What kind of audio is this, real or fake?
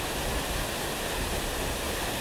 real